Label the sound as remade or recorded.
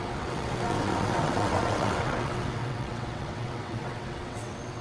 remade